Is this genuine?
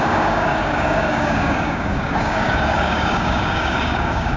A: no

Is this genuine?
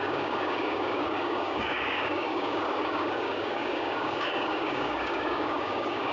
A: no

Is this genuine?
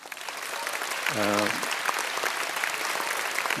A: yes